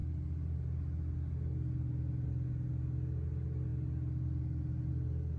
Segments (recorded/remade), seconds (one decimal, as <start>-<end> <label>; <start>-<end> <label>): 0.0-5.4 recorded